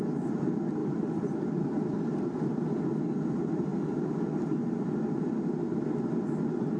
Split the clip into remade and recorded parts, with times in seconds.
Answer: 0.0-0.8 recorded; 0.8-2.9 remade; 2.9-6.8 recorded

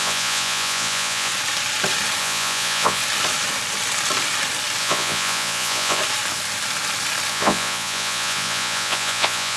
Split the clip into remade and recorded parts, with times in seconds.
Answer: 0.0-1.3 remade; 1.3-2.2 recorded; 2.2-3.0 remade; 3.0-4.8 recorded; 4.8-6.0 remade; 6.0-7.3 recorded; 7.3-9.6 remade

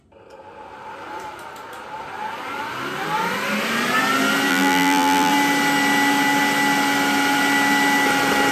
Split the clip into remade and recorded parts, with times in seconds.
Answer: 0.0-4.5 recorded; 4.5-5.3 remade; 5.3-8.5 recorded

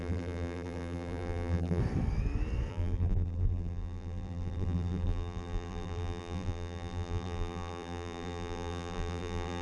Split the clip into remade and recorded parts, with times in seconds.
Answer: 0.0-1.8 remade; 1.8-2.7 recorded; 2.7-9.6 remade

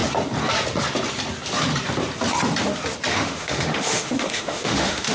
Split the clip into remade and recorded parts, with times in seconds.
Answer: 0.0-3.1 recorded; 3.1-5.1 remade